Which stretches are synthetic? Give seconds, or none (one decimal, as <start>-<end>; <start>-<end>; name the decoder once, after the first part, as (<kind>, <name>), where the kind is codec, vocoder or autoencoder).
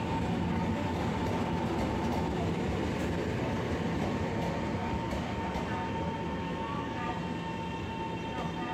0.5-1.1 (codec, DAC); 4.8-5.4; 6.4-7.1